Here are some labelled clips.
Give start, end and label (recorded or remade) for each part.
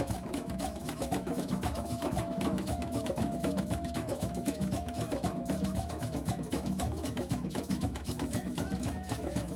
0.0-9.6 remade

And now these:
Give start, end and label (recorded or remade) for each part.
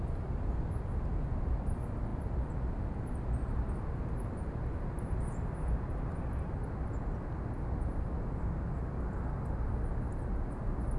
0.0-11.0 recorded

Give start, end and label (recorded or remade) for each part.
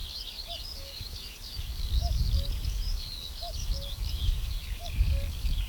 0.0-5.7 remade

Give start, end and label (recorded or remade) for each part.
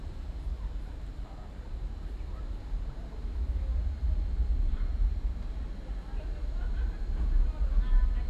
0.0-0.5 recorded; 0.5-2.6 remade; 2.6-4.5 recorded; 4.5-6.2 remade; 6.2-8.3 recorded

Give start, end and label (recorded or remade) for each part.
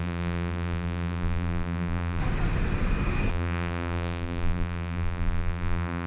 0.0-2.2 remade; 2.2-3.3 recorded; 3.3-6.1 remade